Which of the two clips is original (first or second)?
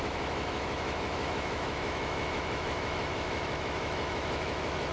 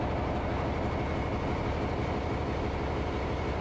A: second